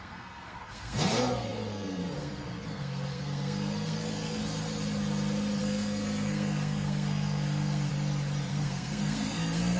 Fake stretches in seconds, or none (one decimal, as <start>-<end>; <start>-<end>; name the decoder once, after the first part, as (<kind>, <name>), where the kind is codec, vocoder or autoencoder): 0.0-4.4 (codec, SNAC); 5.6-7.9; 8.5-9.8